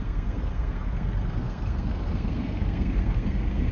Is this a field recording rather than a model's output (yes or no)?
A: no